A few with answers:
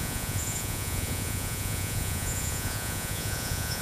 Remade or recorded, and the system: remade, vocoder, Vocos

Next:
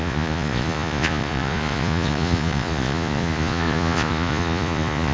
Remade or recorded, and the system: remade, vocoder, Vocos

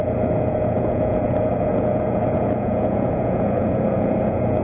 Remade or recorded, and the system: remade, vocoder, Vocos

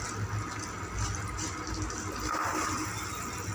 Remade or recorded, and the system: recorded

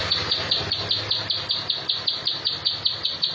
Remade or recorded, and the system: recorded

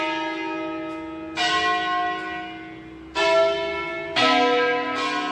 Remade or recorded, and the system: recorded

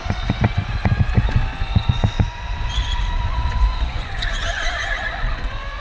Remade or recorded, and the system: remade, vocoder, Vocos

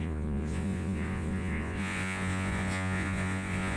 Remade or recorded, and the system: remade, vocoder, Vocos